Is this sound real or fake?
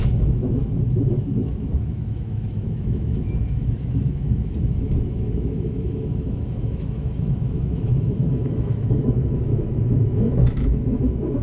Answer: fake